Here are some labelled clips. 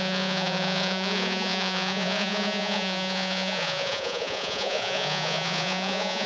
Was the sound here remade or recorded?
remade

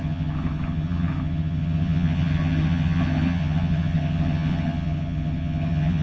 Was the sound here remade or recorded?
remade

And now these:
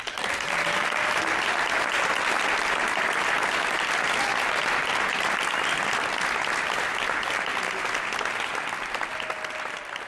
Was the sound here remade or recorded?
recorded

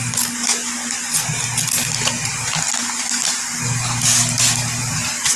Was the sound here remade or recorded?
recorded